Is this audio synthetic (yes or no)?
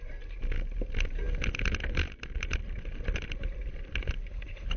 no